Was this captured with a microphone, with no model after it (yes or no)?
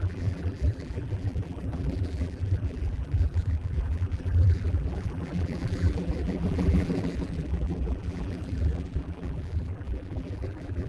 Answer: no